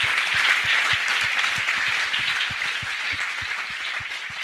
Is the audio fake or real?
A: real